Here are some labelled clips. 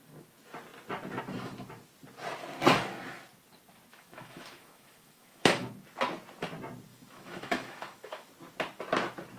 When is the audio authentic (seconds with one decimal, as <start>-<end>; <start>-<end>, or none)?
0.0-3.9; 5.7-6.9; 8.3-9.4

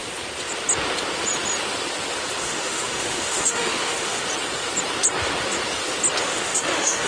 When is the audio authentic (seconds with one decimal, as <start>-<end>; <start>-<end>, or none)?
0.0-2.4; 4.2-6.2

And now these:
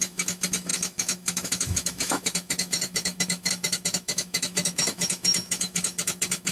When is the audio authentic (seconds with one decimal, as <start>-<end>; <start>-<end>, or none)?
none

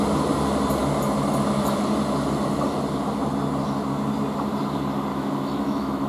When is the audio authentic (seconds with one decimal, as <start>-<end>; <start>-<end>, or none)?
0.0-5.1